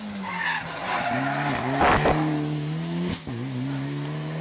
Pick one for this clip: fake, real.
real